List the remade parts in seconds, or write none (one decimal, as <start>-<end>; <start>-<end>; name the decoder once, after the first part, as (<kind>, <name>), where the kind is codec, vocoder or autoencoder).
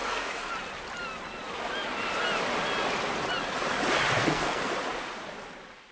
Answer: 0.0-0.5 (codec, SNAC); 4.2-4.7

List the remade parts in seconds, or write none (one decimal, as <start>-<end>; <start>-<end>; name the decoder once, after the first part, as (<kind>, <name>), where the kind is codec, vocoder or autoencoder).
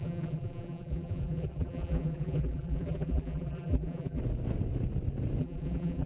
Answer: 0.0-4.2 (vocoder, BigVGAN v2); 5.4-6.1